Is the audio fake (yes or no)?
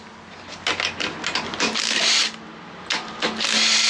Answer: no